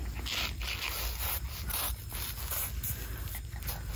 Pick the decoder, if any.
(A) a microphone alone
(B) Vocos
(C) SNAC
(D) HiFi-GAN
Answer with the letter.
A